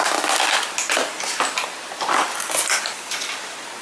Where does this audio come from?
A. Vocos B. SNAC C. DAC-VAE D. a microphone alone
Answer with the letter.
D